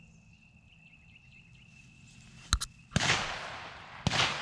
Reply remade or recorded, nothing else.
recorded